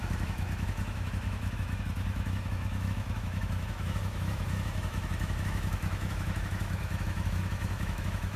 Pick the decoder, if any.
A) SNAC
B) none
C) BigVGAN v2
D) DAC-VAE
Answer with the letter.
D